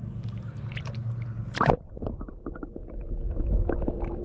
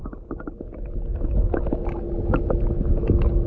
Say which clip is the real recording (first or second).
second